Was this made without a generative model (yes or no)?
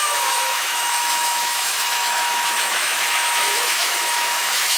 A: no